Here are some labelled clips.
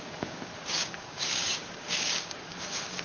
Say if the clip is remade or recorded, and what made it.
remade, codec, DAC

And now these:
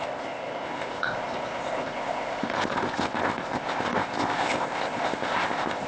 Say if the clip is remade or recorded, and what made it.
remade, codec, ZipCodec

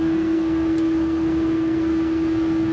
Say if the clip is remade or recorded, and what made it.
remade, codec, SNAC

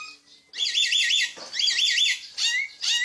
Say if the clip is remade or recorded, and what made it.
recorded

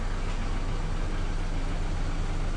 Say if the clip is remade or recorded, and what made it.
recorded